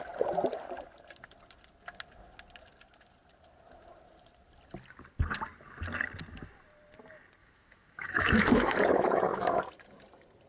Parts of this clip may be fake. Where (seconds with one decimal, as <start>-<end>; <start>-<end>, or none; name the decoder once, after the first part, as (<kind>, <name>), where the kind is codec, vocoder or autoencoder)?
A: 7.4-9.6 (autoencoder, DAC-VAE)